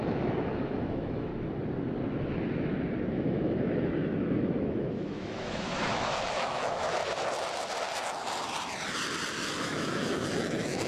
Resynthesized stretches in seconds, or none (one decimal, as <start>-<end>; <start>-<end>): 0.0-1.3; 3.1-7.0; 9.6-10.9